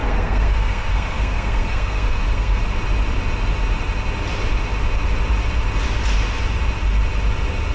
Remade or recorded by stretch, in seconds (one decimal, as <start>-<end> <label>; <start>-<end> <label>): 0.0-2.6 remade; 2.6-7.7 recorded